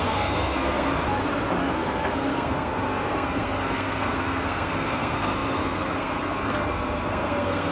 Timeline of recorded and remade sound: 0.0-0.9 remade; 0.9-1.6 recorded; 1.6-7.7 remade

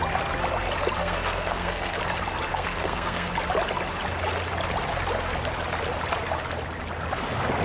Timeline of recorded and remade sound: 0.0-1.0 recorded; 1.0-2.0 remade; 2.0-2.5 recorded; 2.5-3.3 remade; 3.3-7.6 recorded

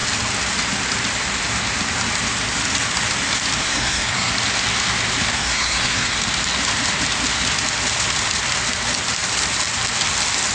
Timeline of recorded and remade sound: 0.0-3.6 recorded; 3.6-4.3 remade; 4.3-5.3 recorded; 5.3-6.2 remade; 6.2-10.5 recorded